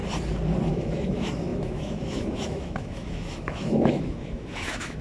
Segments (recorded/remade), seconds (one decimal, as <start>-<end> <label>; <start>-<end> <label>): 0.0-0.7 recorded; 0.7-5.0 remade